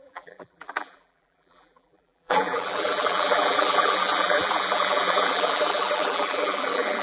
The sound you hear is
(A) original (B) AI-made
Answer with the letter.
B